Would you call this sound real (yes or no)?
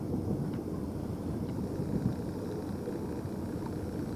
yes